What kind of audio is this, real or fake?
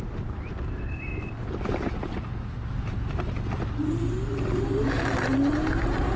real